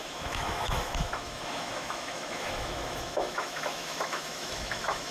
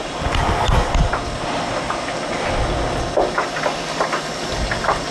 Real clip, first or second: second